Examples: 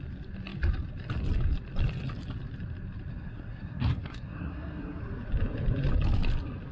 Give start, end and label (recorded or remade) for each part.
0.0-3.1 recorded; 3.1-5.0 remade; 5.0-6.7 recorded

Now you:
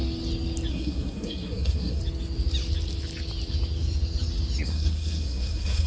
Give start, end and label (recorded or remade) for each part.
0.0-0.7 recorded; 0.7-2.0 remade; 2.0-4.6 recorded; 4.6-5.9 remade

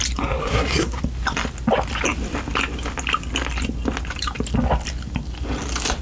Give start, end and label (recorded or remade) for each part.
0.0-0.4 recorded; 0.4-1.0 remade; 1.0-6.0 recorded